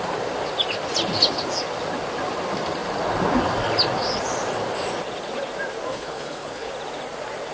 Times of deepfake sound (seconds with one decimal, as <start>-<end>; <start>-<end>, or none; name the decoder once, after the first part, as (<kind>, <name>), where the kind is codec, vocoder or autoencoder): 5.9-6.7 (codec, HILCodec)